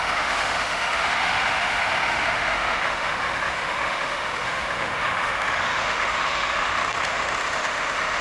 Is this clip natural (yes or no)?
no